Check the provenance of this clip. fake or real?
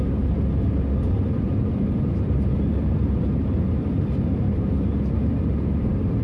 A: fake